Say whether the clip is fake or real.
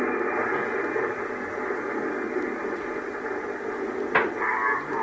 real